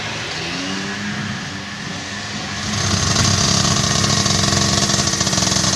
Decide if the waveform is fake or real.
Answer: real